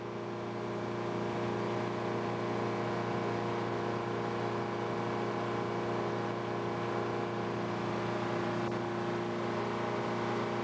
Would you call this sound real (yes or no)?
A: yes